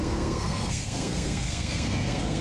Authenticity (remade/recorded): remade